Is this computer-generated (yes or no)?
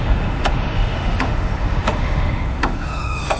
yes